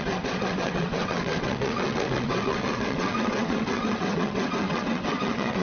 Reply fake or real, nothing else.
fake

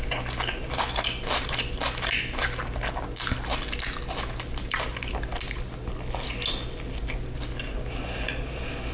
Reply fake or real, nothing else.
real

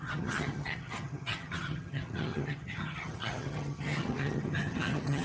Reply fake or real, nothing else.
fake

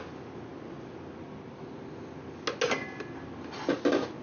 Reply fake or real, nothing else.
real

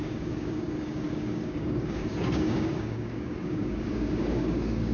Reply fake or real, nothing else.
fake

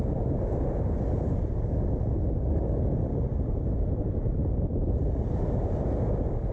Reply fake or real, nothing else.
real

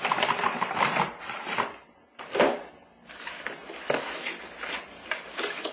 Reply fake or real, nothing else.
real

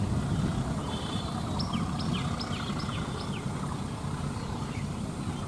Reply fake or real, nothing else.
real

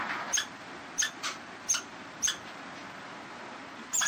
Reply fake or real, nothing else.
real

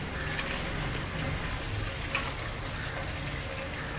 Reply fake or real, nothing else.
real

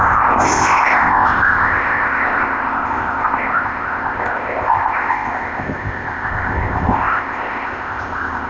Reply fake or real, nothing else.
fake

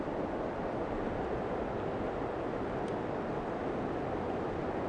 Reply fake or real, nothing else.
real